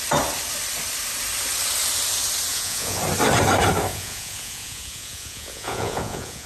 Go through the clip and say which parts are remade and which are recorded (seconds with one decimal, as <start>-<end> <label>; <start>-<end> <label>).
0.0-2.5 recorded; 2.5-3.0 remade; 3.0-3.9 recorded; 3.9-6.5 remade